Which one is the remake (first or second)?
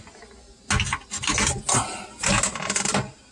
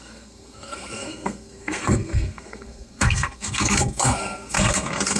second